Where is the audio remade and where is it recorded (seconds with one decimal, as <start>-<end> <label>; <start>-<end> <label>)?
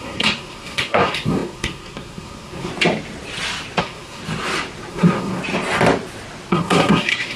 0.0-2.7 remade; 2.7-3.8 recorded; 3.8-4.2 remade; 4.2-4.9 recorded; 4.9-5.4 remade; 5.4-6.5 recorded; 6.5-7.4 remade